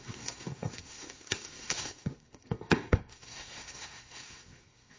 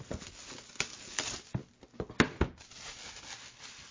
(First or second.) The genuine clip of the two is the second